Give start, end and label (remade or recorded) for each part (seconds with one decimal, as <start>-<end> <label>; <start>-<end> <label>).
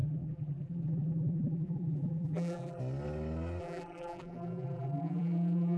0.0-2.8 remade; 2.8-3.6 recorded; 3.6-5.8 remade